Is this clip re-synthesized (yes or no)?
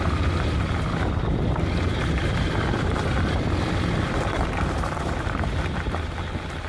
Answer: no